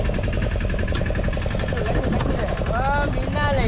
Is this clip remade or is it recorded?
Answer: recorded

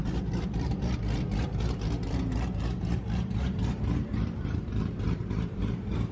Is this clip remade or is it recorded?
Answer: remade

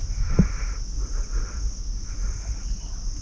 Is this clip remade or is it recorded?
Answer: recorded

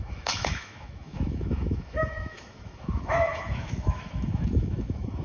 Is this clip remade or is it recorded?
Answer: remade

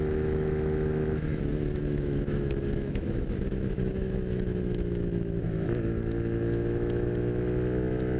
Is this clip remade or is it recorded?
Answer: remade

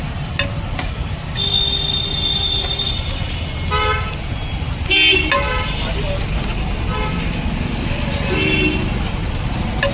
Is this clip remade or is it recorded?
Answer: recorded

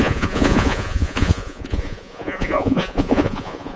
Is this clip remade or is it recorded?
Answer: remade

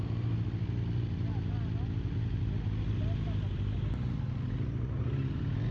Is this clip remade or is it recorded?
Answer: recorded